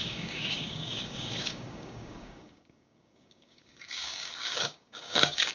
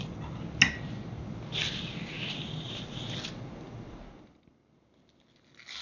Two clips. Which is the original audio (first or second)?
second